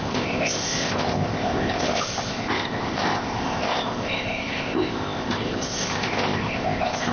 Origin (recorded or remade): remade